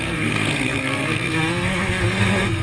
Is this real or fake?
fake